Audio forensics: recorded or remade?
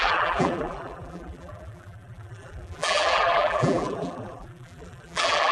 remade